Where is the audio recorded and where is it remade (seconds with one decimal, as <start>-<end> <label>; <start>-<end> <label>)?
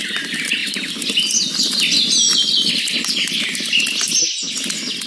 0.0-5.1 recorded